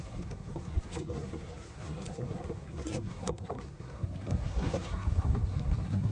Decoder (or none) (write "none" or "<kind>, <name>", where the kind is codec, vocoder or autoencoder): codec, SNAC